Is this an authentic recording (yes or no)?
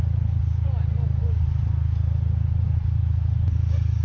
yes